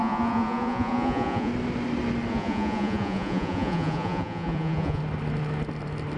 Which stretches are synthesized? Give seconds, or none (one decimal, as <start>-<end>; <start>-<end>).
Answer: 0.0-1.5; 2.3-5.0